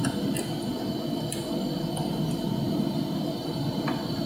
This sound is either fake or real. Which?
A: real